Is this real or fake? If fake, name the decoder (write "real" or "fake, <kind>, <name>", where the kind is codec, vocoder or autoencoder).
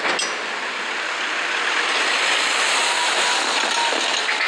real